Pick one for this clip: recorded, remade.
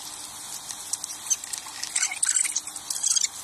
recorded